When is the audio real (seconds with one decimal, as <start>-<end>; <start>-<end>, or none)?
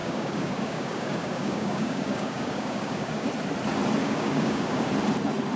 3.3-4.0; 4.9-5.6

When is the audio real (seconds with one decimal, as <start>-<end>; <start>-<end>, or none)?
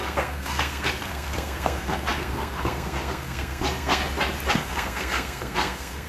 4.0-4.5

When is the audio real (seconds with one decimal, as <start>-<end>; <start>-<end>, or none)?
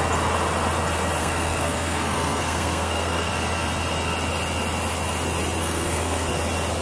0.0-1.2; 3.3-5.6; 6.3-6.8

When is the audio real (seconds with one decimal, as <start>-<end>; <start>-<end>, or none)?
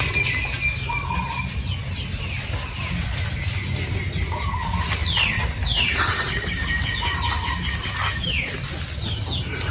0.0-5.0; 6.7-9.7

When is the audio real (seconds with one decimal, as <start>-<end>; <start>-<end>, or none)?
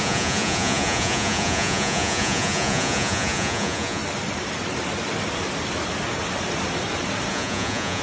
4.0-7.3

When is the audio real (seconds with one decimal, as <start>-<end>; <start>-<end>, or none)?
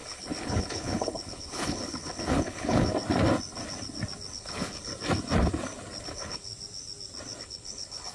2.9-4.3; 4.9-6.0; 6.5-7.4